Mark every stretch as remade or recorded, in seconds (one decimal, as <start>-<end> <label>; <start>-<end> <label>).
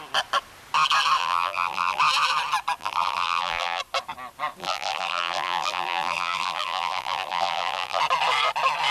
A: 0.0-1.2 recorded; 1.2-2.0 remade; 2.0-2.8 recorded; 2.8-3.8 remade; 3.8-4.6 recorded; 4.6-8.0 remade; 8.0-8.9 recorded